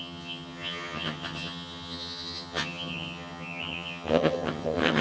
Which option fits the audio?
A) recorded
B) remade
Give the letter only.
B